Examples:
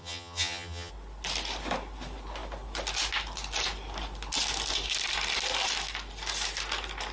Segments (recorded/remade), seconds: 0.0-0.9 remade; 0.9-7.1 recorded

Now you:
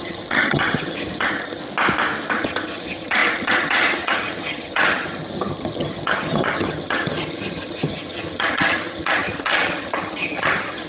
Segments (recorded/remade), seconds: 0.0-1.6 remade; 1.6-2.3 recorded; 2.3-10.9 remade

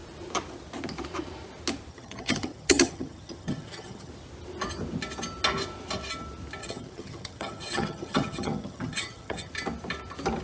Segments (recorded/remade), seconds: 0.0-1.9 recorded; 1.9-4.1 remade; 4.1-6.6 recorded; 6.6-9.5 remade; 9.5-10.4 recorded

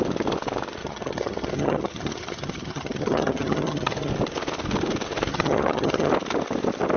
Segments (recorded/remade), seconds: 0.0-0.8 recorded; 0.8-4.1 remade; 4.1-5.3 recorded; 5.3-6.1 remade; 6.1-7.0 recorded

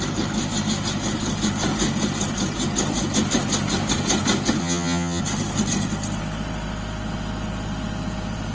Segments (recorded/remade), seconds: 0.0-4.6 recorded; 4.6-5.2 remade; 5.2-8.5 recorded

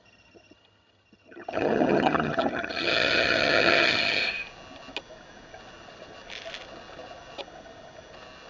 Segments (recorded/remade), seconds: 0.0-4.2 remade; 4.2-8.5 recorded